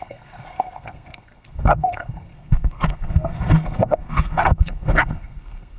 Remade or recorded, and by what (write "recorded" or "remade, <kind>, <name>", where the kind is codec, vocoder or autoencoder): remade, codec, SNAC